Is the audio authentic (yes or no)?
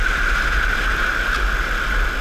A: yes